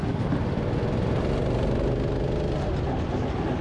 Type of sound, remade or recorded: recorded